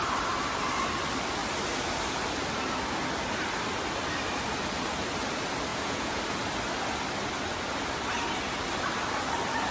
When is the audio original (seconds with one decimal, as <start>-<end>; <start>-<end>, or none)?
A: 0.0-5.7; 6.2-9.7